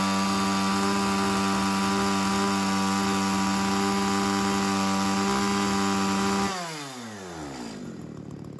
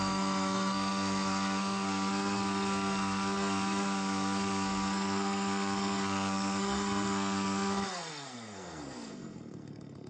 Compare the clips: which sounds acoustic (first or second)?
first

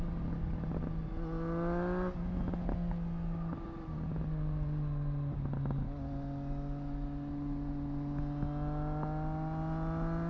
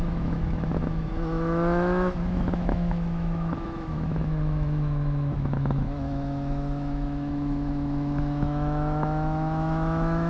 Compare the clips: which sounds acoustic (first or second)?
first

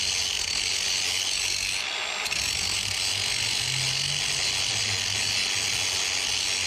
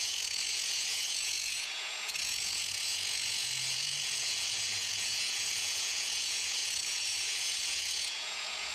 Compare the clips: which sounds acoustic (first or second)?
first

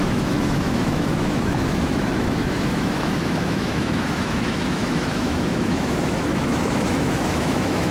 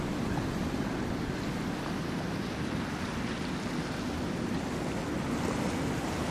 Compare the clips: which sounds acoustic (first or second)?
second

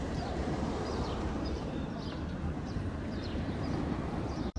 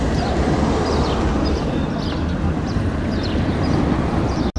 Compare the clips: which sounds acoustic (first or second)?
second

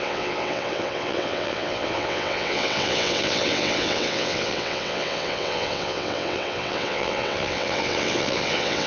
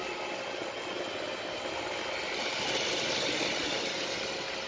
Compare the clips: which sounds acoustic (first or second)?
second